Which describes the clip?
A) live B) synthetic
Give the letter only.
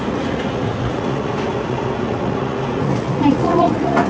B